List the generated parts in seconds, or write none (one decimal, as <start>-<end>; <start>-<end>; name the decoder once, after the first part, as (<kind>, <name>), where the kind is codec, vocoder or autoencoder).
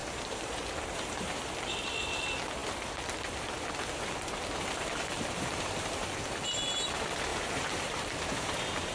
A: 0.0-1.4 (vocoder, BigVGAN v2); 7.3-8.9